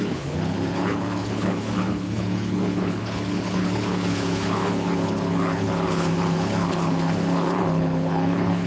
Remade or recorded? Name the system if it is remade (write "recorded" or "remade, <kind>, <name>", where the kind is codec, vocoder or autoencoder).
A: remade, codec, HILCodec